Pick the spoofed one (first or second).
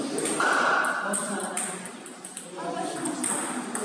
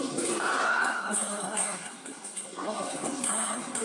second